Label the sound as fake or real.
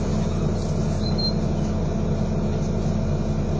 real